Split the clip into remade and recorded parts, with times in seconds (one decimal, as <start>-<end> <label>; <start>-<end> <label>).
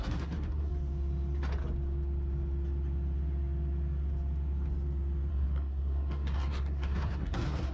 0.0-0.7 remade; 0.7-5.3 recorded; 5.3-7.7 remade